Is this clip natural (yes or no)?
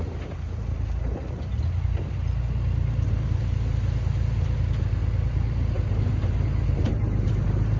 yes